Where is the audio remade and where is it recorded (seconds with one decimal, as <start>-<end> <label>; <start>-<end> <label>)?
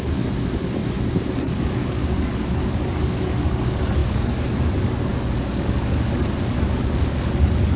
0.0-0.8 remade; 0.8-1.4 recorded; 1.4-7.8 remade